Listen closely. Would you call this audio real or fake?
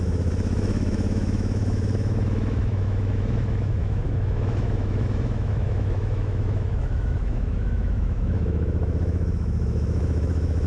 fake